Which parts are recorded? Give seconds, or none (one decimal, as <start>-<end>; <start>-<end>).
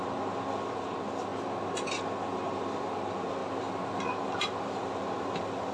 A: 1.3-2.0; 3.4-4.2